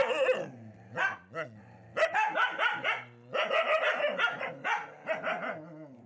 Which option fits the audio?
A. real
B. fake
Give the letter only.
A